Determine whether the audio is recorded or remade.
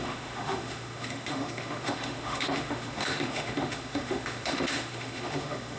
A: remade